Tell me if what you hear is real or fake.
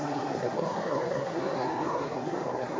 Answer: fake